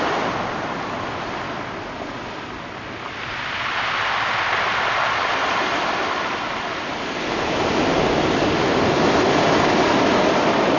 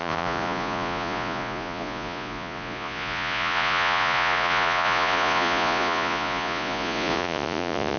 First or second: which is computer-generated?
second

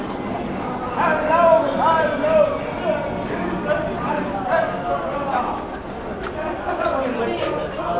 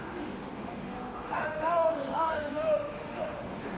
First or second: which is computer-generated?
second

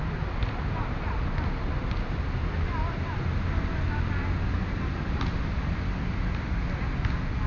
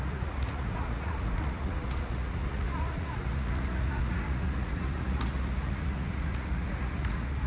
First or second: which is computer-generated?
second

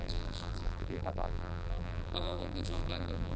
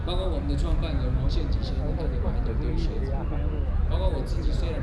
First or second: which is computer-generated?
first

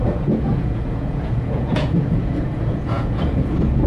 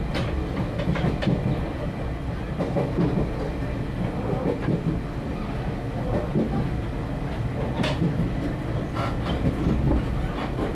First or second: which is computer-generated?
first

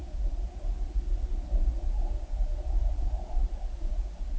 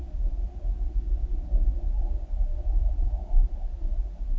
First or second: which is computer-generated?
first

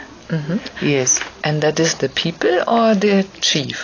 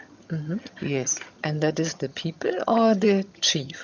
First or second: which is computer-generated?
second